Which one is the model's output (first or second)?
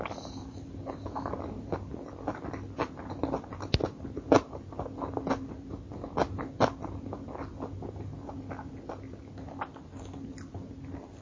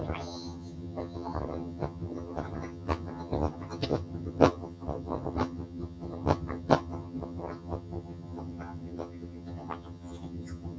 second